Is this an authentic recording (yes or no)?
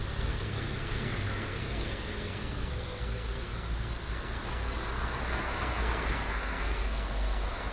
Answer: no